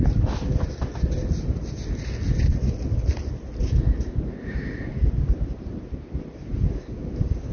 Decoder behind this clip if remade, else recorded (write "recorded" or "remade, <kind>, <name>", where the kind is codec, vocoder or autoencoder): recorded